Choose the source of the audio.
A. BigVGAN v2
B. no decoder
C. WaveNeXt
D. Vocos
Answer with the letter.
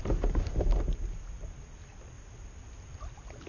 B